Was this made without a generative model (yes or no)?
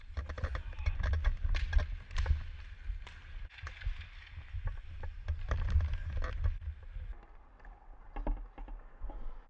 yes